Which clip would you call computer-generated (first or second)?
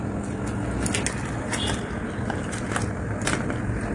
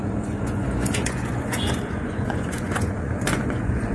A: second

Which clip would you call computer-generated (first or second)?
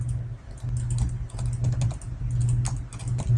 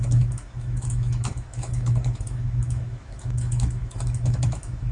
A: second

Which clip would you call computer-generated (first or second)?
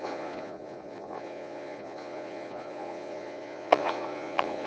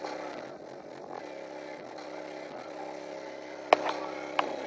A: first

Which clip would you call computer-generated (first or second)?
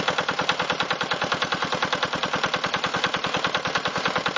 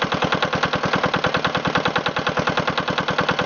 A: first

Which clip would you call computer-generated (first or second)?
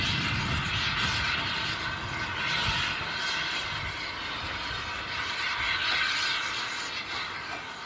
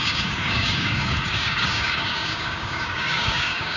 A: second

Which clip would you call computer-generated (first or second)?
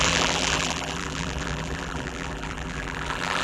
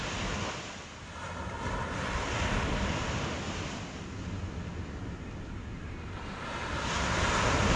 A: first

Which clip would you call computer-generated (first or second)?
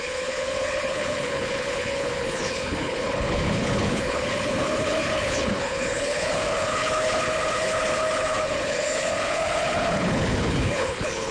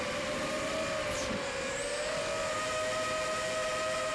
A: first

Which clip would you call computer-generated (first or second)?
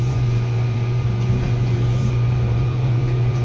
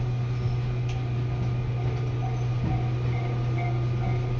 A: first